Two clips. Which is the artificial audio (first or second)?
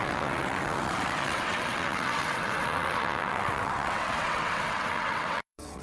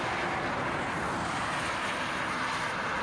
first